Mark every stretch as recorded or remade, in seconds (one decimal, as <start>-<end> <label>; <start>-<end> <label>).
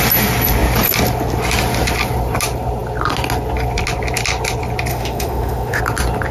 0.0-4.9 recorded; 4.9-5.8 remade; 5.8-6.3 recorded